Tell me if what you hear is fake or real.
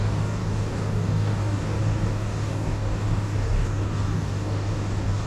fake